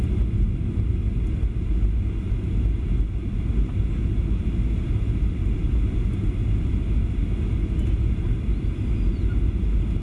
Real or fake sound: real